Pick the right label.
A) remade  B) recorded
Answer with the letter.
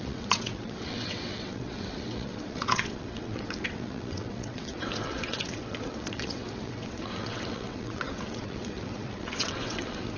A